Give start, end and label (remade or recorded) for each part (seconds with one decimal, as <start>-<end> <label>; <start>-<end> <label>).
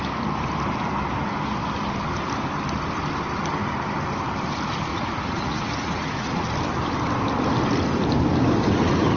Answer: 0.0-4.9 recorded; 4.9-6.5 remade; 6.5-9.2 recorded